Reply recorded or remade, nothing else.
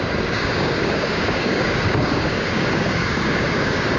remade